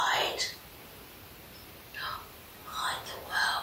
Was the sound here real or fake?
real